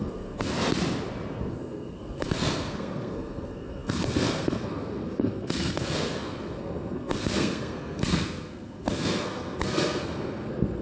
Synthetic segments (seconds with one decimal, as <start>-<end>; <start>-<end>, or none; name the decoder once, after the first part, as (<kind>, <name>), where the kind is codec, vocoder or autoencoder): 0.0-0.5 (codec, SNAC); 1.5-10.8